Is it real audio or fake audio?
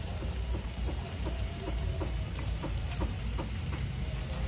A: fake